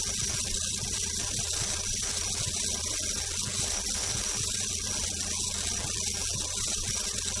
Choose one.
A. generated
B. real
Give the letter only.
B